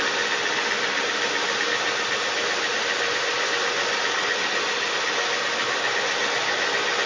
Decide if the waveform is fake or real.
real